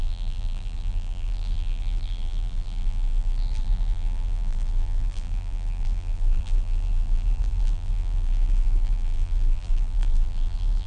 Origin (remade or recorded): remade